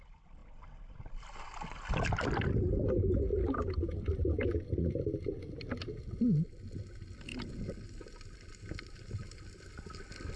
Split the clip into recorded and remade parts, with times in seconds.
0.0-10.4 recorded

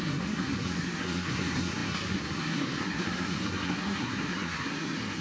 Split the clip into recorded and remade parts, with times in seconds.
0.0-5.2 remade

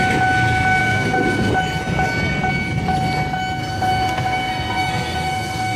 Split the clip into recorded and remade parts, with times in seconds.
0.0-0.8 recorded; 0.8-1.5 remade; 1.5-3.6 recorded; 3.6-5.8 remade

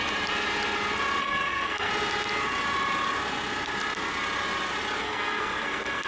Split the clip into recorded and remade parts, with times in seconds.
0.0-1.2 recorded; 1.2-1.9 remade; 1.9-5.0 recorded; 5.0-6.1 remade